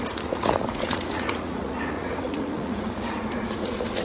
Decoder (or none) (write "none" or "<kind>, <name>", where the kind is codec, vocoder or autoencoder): vocoder, Vocos